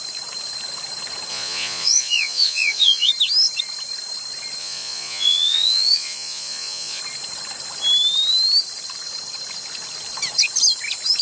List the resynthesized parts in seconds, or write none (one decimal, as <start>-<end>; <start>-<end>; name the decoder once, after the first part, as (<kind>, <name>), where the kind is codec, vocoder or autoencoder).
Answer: 1.3-3.1 (vocoder, Vocos); 4.6-7.0